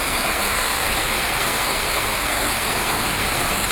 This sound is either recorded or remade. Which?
remade